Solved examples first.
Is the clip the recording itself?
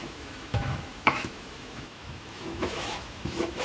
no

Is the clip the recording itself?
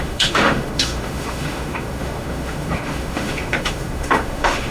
no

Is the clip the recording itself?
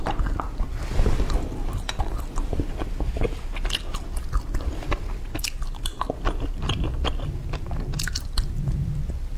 yes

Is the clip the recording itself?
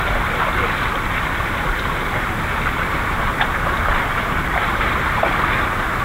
yes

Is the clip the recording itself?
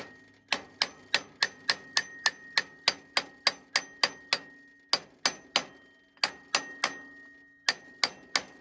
yes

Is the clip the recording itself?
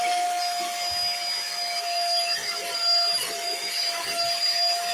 no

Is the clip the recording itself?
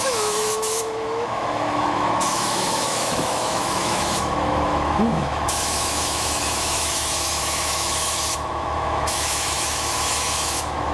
no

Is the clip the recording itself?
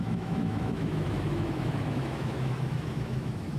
no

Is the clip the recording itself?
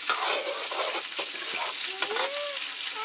yes